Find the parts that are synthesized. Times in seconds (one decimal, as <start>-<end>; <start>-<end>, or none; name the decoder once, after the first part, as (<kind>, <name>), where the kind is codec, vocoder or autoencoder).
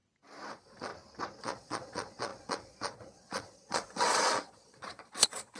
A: 0.5-0.9 (vocoder, Vocos); 1.4-5.6